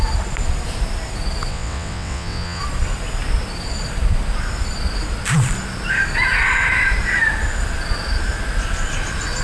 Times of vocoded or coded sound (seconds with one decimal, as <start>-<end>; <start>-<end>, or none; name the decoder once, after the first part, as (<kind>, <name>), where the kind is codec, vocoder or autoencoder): 1.5-2.6 (vocoder, WaveNeXt)